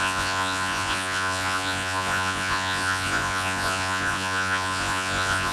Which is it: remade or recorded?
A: remade